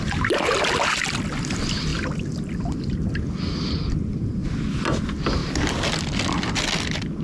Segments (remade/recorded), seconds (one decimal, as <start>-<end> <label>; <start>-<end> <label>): 0.0-7.2 recorded